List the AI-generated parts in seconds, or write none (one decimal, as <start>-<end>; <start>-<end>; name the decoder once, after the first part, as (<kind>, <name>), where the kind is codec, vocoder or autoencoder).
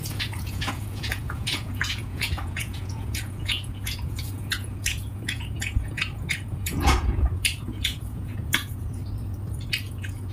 0.0-9.0 (vocoder, Vocos); 9.9-10.3